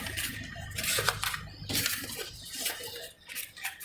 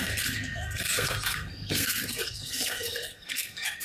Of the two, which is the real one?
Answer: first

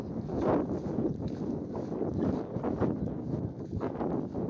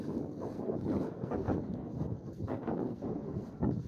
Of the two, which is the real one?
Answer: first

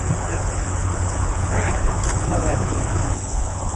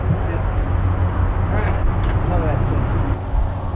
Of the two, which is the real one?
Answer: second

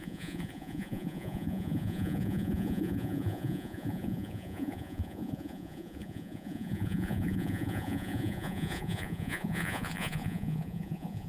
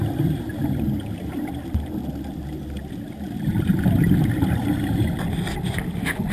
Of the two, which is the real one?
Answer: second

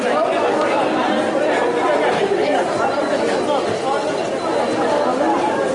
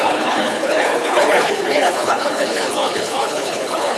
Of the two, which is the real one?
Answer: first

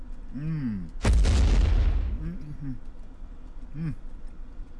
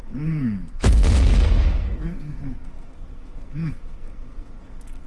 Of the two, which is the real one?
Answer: first